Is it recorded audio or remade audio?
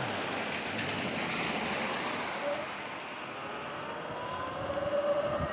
recorded